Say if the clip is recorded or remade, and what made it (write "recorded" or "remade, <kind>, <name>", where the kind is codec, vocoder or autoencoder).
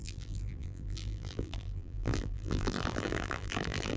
remade, vocoder, BigVGAN v2